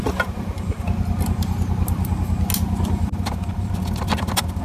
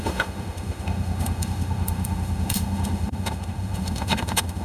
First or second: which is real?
first